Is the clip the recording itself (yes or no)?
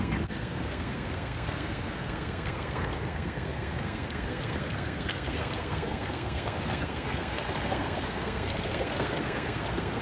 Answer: no